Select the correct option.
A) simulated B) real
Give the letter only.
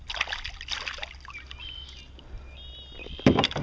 B